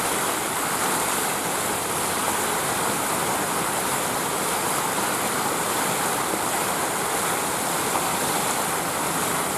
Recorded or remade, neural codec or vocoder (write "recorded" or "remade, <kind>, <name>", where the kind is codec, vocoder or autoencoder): recorded